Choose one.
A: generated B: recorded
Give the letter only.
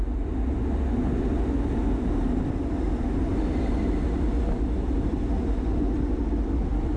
B